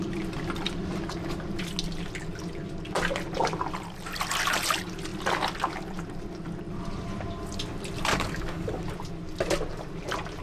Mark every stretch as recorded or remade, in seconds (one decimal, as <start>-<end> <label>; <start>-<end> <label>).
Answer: 0.0-8.1 recorded; 8.1-8.9 remade; 8.9-10.4 recorded